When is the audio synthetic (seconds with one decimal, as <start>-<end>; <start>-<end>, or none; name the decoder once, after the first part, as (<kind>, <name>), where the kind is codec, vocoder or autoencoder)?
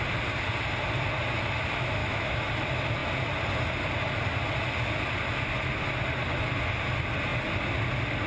2.0-2.5 (autoencoder, DAC-VAE)